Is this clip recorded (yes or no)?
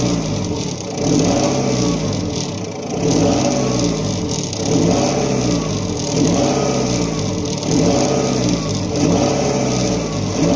yes